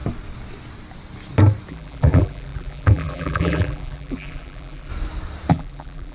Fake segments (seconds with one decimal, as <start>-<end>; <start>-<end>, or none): 1.7-4.9; 5.5-6.1